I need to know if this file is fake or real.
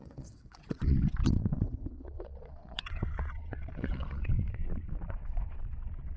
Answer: fake